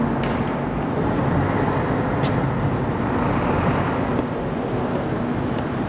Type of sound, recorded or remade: recorded